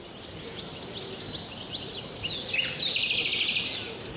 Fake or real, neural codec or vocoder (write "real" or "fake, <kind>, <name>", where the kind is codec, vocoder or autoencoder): real